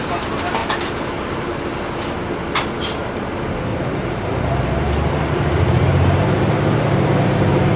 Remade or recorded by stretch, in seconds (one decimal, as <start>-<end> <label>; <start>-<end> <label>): 0.0-3.7 recorded; 3.7-7.8 remade